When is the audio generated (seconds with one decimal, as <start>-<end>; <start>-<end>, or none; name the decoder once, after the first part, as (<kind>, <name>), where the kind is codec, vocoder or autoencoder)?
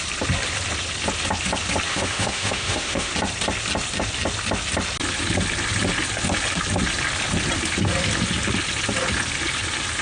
1.9-3.1 (autoencoder, DAC-VAE)